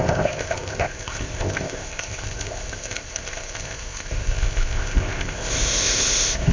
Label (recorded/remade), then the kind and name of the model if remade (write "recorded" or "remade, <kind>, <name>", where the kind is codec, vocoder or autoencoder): remade, codec, ZipCodec